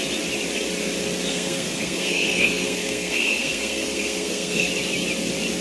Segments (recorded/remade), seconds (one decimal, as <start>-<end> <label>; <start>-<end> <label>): 0.0-1.3 recorded; 1.3-4.7 remade; 4.7-5.6 recorded